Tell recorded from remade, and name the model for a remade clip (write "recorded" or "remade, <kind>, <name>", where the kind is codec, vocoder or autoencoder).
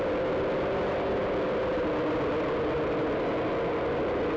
recorded